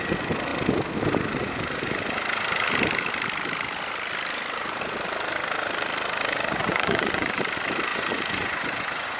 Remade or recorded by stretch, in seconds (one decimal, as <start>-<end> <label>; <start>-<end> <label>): 0.0-6.6 recorded; 6.6-7.4 remade; 7.4-7.9 recorded; 7.9-9.2 remade

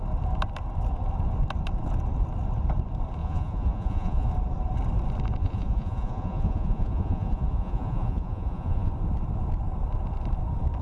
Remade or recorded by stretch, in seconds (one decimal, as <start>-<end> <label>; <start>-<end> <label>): 0.0-3.2 recorded; 3.2-4.3 remade; 4.3-5.4 recorded; 5.4-8.9 remade; 8.9-10.8 recorded

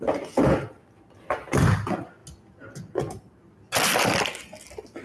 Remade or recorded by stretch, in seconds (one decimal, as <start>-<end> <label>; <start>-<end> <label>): 0.0-5.0 recorded

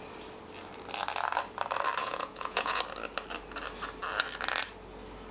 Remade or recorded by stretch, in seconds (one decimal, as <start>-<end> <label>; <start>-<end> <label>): 0.0-2.0 recorded; 2.0-2.8 remade; 2.8-5.3 recorded

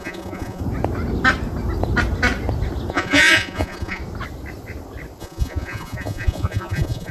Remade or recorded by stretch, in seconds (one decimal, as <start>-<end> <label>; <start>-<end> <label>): 0.0-0.6 remade; 0.6-2.9 recorded; 2.9-4.0 remade; 4.0-5.2 recorded; 5.2-7.1 remade

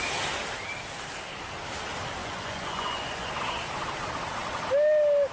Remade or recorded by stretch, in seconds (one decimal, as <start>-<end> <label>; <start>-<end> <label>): 0.0-2.2 recorded; 2.2-3.3 remade; 3.3-5.3 recorded

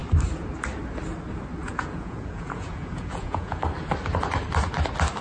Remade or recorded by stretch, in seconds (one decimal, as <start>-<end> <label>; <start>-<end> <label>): 0.0-1.6 recorded; 1.6-3.6 remade; 3.6-5.2 recorded